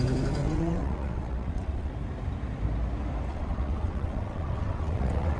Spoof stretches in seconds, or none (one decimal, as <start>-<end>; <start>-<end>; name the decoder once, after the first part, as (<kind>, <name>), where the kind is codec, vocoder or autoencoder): 0.4-1.9 (vocoder, WaveNeXt); 3.3-5.4